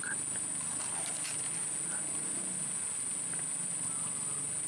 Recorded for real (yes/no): yes